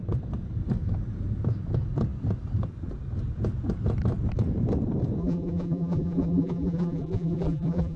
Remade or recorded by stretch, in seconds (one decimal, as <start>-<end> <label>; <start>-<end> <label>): 0.0-5.2 recorded; 5.2-8.0 remade